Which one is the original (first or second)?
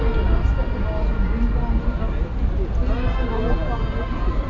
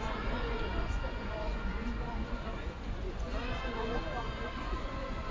first